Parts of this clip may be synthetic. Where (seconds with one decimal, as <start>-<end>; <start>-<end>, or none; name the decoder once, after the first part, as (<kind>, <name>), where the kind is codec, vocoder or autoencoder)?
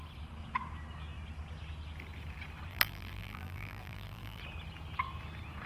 2.7-4.4 (vocoder, BigVGAN v2)